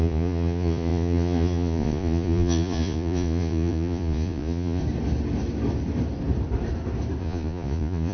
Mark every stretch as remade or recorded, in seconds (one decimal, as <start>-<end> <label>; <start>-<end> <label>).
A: 0.0-4.8 remade; 4.8-7.2 recorded; 7.2-8.1 remade